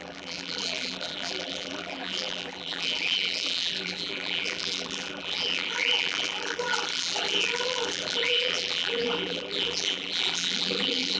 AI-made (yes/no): yes